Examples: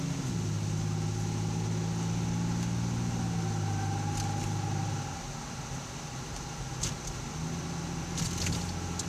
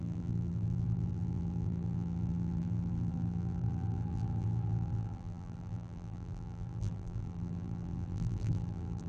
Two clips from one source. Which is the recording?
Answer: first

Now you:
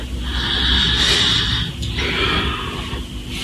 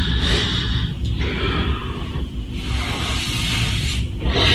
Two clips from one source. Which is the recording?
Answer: first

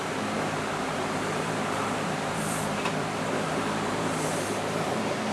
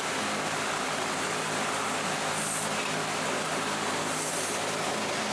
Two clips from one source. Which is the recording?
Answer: second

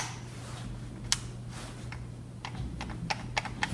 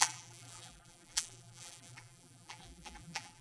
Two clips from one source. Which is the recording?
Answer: first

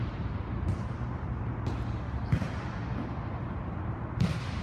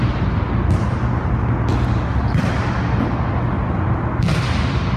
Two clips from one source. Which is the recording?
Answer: second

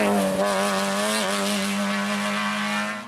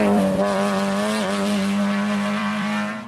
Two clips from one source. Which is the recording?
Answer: first